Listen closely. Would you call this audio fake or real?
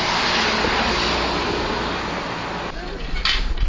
real